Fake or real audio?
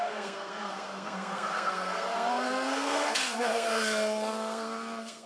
fake